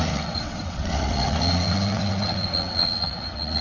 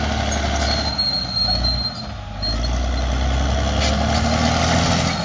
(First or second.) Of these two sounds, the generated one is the first